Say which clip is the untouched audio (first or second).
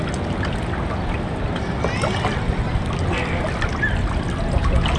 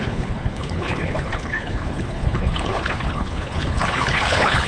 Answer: first